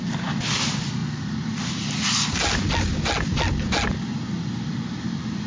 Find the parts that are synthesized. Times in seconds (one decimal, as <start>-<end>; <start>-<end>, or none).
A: none